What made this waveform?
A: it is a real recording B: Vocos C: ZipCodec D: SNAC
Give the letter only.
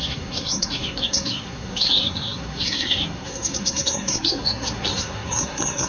D